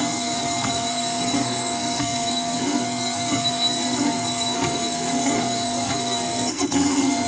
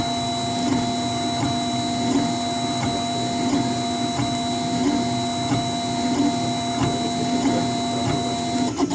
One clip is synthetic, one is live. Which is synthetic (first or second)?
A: first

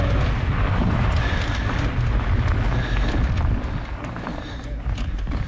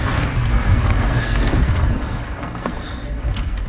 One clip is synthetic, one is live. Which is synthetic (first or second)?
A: second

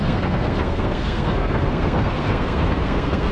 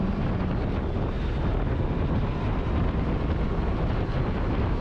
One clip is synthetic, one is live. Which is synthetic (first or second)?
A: first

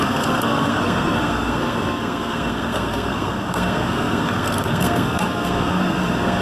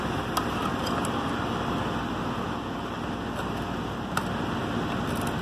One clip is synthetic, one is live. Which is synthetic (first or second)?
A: first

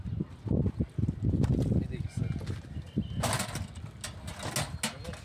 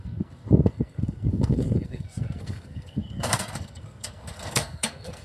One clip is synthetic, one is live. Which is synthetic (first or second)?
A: second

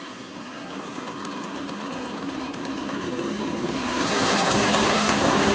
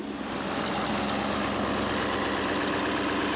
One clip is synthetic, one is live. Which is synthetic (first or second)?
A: first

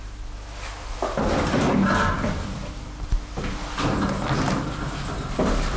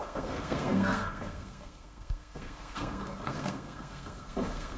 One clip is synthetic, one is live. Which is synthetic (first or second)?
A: second